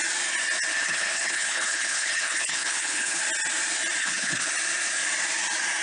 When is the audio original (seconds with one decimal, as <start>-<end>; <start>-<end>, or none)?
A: 0.0-0.7; 3.2-4.0; 4.5-5.8